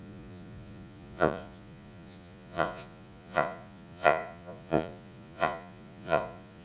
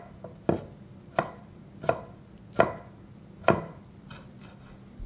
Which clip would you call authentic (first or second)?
second